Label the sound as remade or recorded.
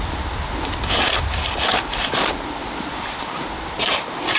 recorded